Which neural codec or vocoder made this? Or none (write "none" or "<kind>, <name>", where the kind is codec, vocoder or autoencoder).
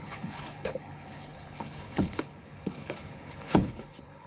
codec, HILCodec